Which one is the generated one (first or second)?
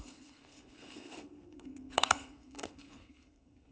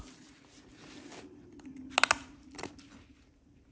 first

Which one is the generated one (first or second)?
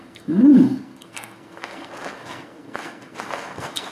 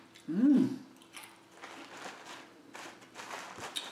first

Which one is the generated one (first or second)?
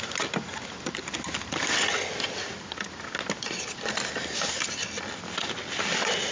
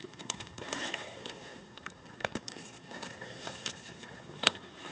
second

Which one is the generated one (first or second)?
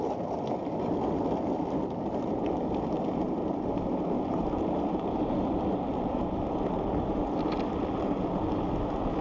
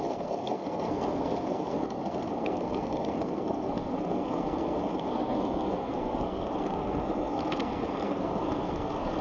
second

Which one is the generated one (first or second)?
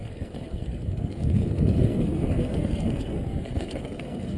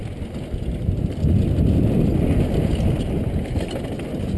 first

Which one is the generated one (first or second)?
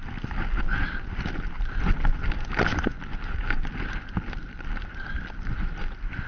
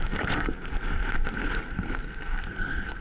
second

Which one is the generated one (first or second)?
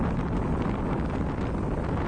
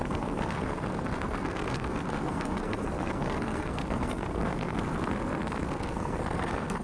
second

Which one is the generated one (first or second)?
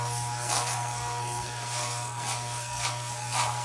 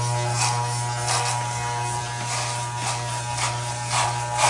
first